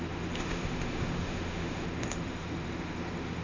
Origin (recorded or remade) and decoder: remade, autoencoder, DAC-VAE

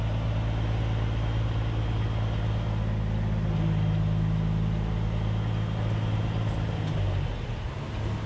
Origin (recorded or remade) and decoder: recorded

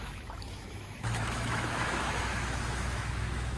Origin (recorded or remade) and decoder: remade, autoencoder, DAC-VAE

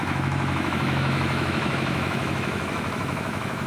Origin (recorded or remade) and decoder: remade, autoencoder, DAC-VAE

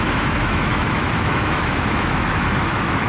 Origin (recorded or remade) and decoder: remade, autoencoder, DAC-VAE